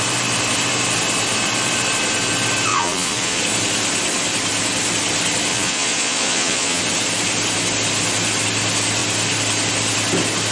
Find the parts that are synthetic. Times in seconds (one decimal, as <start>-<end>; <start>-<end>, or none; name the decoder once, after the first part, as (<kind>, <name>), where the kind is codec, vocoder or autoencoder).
2.7-3.4 (vocoder, Vocos); 5.5-6.8